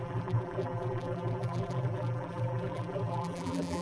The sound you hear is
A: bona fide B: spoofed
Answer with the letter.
B